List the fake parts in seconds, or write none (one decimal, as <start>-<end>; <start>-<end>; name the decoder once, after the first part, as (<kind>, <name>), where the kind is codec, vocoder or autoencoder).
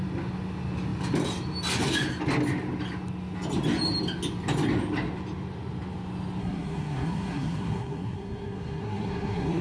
6.4-9.6 (codec, SNAC)